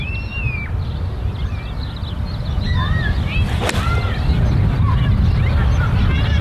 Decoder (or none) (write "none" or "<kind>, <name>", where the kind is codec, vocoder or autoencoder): none